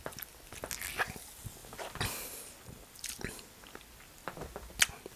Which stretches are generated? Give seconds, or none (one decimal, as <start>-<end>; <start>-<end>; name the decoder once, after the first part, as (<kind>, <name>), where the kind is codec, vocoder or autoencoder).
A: none